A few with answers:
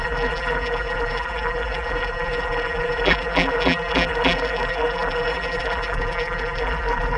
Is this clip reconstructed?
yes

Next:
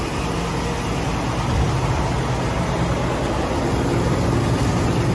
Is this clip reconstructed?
no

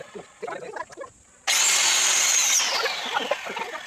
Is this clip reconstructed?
no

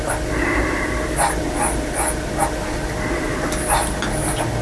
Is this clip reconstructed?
no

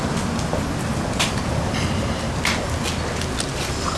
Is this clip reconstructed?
no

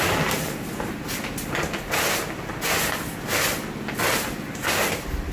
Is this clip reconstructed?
no